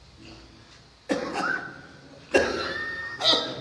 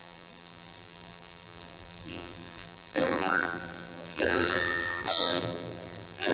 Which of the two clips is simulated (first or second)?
second